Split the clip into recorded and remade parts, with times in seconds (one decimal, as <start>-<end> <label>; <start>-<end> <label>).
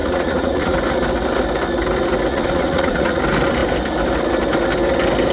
0.0-0.8 remade; 0.8-2.3 recorded; 2.3-3.2 remade; 3.2-5.3 recorded